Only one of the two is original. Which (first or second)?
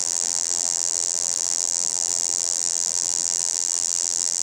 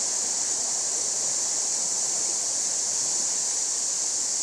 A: second